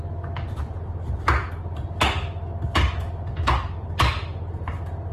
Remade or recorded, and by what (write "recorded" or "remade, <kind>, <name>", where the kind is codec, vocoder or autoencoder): recorded